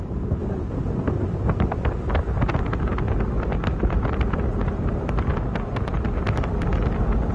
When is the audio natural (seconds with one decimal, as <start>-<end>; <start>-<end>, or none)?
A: 0.0-7.3